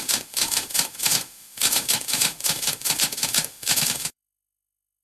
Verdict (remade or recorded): remade